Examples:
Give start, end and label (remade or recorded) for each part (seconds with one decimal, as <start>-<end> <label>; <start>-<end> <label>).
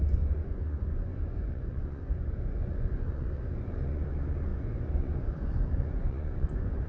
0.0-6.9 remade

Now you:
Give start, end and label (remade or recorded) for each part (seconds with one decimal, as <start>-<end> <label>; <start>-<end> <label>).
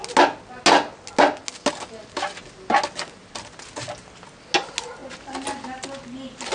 0.0-6.5 recorded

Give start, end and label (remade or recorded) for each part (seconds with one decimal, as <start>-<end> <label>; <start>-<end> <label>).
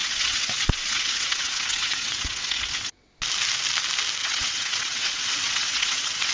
0.0-3.1 remade; 3.1-4.2 recorded; 4.2-6.3 remade